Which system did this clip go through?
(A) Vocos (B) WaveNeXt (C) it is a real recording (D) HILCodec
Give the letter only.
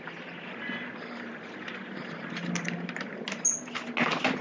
C